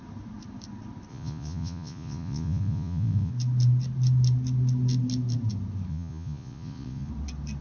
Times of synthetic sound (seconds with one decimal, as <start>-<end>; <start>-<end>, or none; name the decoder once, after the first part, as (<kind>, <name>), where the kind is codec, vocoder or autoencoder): 1.1-3.3 (vocoder, Vocos); 5.9-7.1